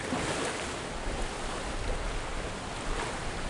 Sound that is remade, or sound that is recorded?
recorded